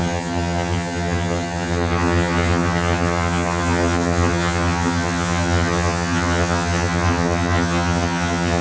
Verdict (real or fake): fake